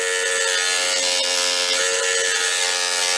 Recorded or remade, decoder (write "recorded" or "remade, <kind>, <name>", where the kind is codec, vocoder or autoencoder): recorded